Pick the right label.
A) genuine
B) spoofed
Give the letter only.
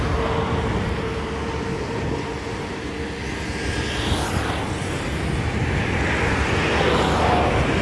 A